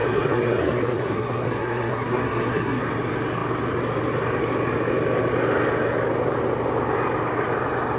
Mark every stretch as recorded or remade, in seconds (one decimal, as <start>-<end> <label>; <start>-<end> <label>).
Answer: 0.0-2.8 remade; 2.8-8.0 recorded